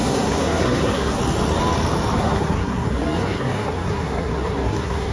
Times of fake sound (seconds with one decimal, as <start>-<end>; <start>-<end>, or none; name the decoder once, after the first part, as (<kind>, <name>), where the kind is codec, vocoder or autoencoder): 0.0-1.2 (codec, SNAC); 2.2-5.1